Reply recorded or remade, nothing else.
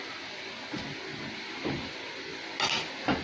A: recorded